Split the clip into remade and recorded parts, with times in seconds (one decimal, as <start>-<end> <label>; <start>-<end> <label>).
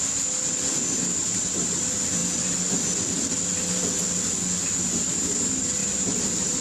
0.0-1.2 recorded; 1.2-1.8 remade; 1.8-5.8 recorded; 5.8-6.6 remade